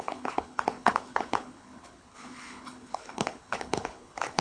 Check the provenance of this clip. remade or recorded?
remade